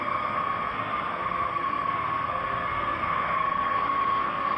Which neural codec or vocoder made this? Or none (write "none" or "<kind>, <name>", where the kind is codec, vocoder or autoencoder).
codec, SNAC